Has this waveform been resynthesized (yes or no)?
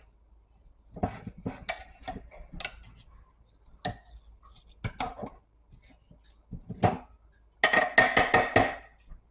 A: no